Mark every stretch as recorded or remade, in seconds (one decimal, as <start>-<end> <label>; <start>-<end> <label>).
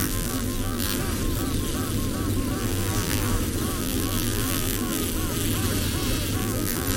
0.0-1.0 remade; 1.0-2.6 recorded; 2.6-3.3 remade; 3.3-3.8 recorded; 3.8-5.0 remade; 5.0-6.4 recorded; 6.4-7.0 remade